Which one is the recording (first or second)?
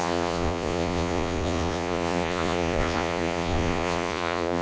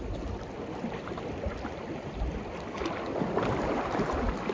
second